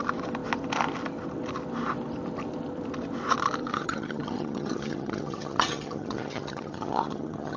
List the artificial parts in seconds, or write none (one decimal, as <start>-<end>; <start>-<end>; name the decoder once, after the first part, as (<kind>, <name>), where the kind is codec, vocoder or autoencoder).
3.6-7.6 (vocoder, HiFi-GAN)